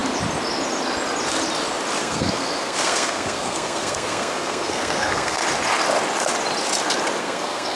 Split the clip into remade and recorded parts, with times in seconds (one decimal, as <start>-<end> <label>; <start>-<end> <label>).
0.0-2.0 recorded; 2.0-5.4 remade; 5.4-7.2 recorded; 7.2-7.8 remade